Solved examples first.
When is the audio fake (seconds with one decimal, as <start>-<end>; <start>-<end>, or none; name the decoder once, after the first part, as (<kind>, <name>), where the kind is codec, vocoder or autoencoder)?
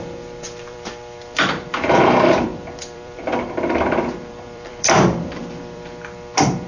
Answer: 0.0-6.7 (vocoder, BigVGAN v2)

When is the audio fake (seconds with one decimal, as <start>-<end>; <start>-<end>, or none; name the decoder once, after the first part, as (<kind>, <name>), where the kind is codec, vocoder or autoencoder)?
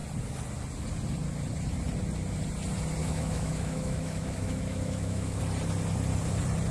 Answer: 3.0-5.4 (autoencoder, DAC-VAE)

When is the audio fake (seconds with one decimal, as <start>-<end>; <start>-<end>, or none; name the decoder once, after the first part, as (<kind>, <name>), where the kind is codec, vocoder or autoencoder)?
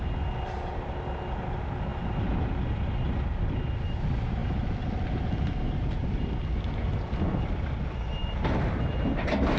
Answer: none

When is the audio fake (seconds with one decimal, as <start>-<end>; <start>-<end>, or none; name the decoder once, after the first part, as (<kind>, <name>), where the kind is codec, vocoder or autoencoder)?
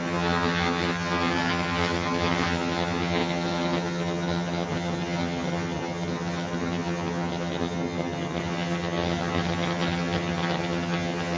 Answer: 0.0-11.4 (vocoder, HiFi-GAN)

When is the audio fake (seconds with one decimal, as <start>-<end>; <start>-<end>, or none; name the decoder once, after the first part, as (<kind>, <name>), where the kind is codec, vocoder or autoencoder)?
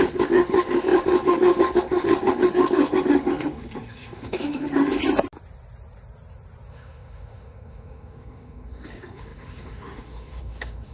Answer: 0.0-5.0 (autoencoder, DAC-VAE); 6.7-10.9